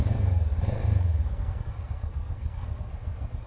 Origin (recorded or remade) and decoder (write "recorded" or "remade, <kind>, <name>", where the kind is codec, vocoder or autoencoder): remade, codec, SNAC